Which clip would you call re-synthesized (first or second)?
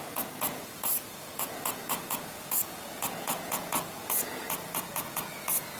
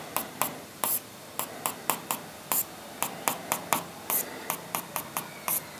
first